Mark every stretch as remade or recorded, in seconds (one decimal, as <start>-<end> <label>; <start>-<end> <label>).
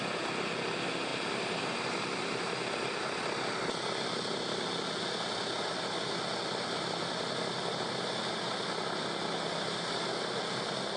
0.0-11.0 recorded